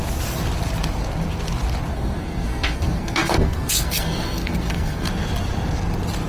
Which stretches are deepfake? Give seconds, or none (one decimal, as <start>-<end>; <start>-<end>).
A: 1.9-5.1